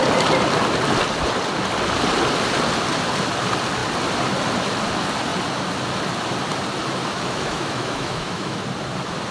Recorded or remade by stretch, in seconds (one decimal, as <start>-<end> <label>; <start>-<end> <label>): 0.0-7.0 recorded; 7.0-8.6 remade; 8.6-9.3 recorded